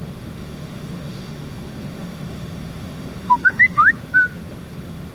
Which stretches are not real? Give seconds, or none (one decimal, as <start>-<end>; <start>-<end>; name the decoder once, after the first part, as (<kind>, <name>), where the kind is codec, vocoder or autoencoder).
0.0-5.1 (autoencoder, DAC-VAE)